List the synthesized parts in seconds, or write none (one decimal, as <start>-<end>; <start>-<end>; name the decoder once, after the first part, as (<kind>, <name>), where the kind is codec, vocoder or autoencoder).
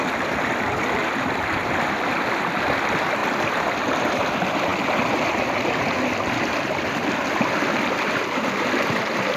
0.0-3.2 (vocoder, BigVGAN v2); 3.8-9.4